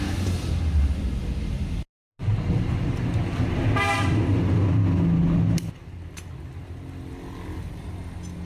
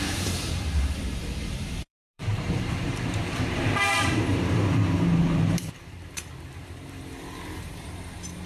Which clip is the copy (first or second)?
second